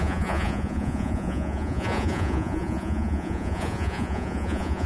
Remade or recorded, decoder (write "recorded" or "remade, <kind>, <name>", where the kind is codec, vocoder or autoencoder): remade, vocoder, Vocos